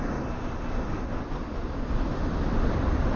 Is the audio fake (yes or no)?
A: no